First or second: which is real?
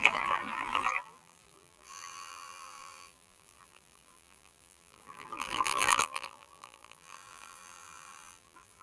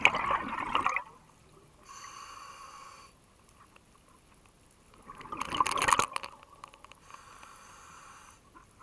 second